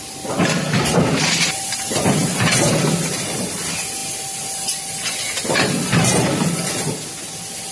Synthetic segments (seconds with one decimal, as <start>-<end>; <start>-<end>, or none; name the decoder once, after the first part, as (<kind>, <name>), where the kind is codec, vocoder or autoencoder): none